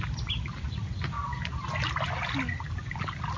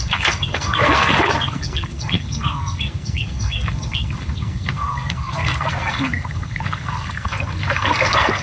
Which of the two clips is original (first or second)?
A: first